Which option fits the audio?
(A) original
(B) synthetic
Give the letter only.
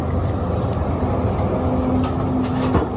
A